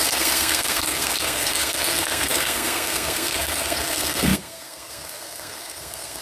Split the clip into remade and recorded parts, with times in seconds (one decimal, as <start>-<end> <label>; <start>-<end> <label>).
0.0-6.2 remade